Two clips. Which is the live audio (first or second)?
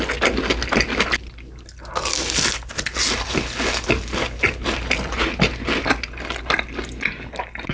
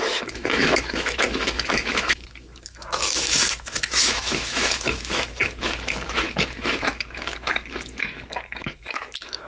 first